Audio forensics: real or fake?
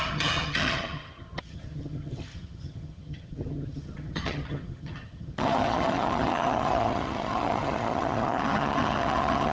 fake